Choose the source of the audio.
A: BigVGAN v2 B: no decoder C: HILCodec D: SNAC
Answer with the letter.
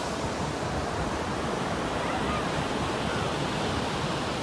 B